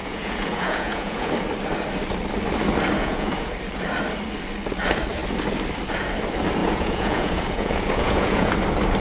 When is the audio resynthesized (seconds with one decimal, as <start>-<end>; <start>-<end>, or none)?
0.0-1.3; 3.0-3.5; 6.6-8.5